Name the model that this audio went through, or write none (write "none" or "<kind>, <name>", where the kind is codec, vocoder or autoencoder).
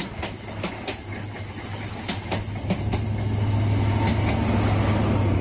none